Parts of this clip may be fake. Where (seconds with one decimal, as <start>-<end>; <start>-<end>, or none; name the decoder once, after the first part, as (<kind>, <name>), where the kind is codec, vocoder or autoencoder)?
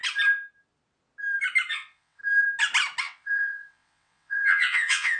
1.7-2.2 (vocoder, WaveNeXt); 3.0-5.2